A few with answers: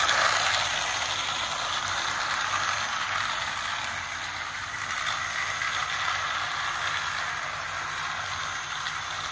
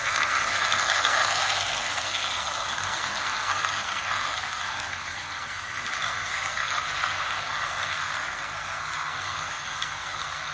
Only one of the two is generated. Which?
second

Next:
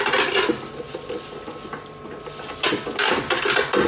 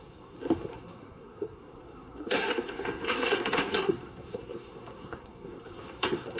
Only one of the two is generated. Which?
second